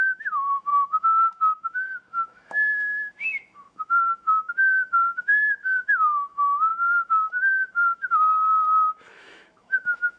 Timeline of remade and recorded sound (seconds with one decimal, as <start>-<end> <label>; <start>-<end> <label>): 0.0-10.2 remade